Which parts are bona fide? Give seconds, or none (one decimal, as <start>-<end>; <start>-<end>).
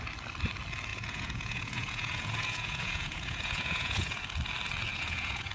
0.0-0.9; 4.2-4.9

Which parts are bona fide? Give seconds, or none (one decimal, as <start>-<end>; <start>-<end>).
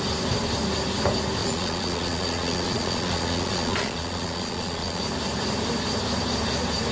0.0-1.4; 5.0-6.9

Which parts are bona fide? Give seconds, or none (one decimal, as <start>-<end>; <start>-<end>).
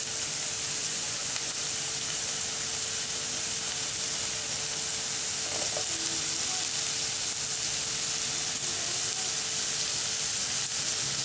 0.0-0.8; 1.6-11.2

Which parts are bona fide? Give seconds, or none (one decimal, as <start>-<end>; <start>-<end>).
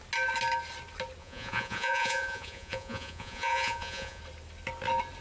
0.0-1.2; 4.2-5.2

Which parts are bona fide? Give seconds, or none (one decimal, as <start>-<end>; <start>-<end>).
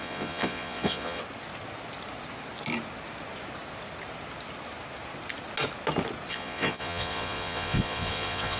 1.2-6.3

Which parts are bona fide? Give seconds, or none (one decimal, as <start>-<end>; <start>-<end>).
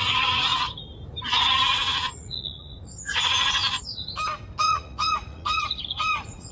0.5-1.4; 3.6-4.6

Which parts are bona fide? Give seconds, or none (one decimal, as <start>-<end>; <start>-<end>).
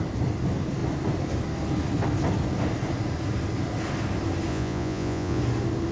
0.0-4.5; 5.4-5.9